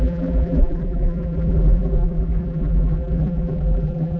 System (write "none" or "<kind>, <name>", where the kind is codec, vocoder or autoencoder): vocoder, BigVGAN v2